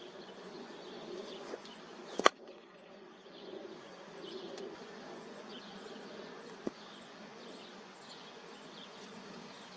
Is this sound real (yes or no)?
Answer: no